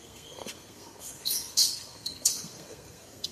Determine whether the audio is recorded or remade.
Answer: remade